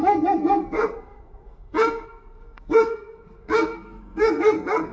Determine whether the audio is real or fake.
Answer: fake